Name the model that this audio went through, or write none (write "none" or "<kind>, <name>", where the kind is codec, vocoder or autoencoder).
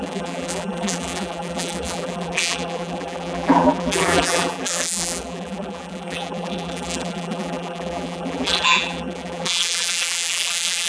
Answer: vocoder, BigVGAN v2